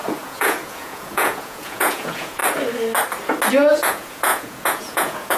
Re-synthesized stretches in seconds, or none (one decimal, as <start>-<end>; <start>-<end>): 0.0-2.4; 3.5-5.4